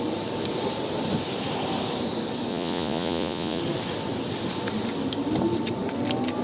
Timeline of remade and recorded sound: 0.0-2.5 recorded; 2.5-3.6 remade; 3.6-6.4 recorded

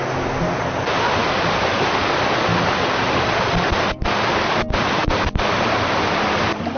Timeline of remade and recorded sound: 0.0-6.8 recorded

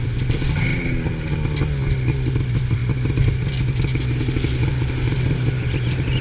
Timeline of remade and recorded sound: 0.0-6.2 recorded